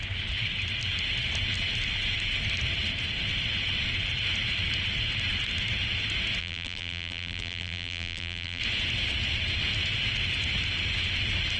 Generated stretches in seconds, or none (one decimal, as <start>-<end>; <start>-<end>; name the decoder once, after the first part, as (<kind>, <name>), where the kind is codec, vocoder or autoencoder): 6.4-8.6 (vocoder, BigVGAN v2)